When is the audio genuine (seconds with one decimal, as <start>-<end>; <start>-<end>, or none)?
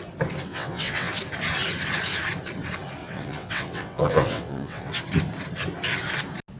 0.0-0.5; 1.1-3.0; 5.0-6.6